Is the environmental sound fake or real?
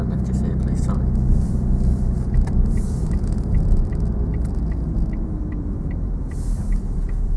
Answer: fake